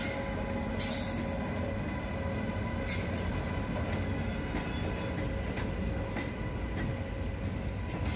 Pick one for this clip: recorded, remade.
recorded